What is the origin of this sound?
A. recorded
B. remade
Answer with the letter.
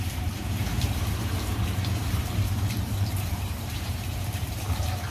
B